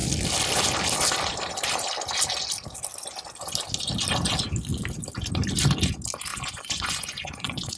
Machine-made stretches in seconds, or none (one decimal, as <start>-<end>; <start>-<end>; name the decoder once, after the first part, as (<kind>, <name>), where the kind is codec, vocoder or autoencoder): 6.3-7.8 (vocoder, Vocos)